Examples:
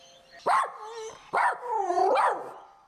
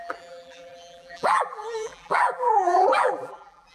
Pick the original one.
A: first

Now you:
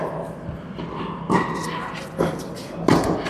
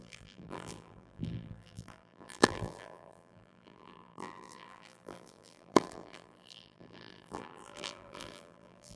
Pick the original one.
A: first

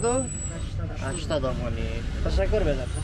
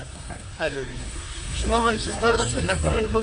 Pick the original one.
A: first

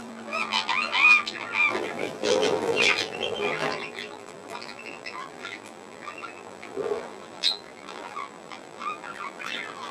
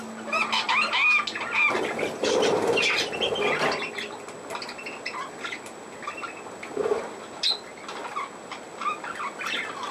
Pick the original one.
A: second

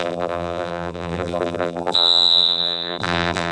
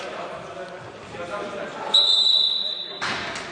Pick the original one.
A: second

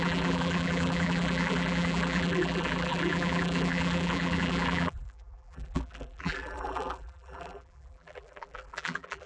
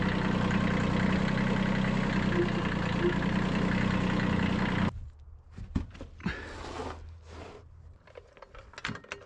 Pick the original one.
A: second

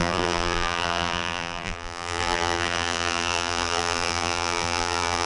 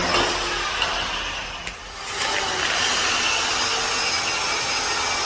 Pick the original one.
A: second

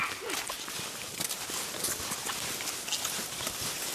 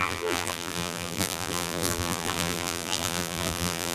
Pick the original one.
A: first